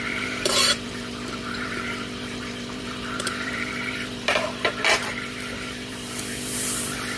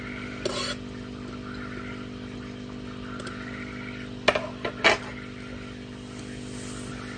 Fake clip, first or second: first